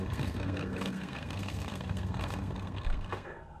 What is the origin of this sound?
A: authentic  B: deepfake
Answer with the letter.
B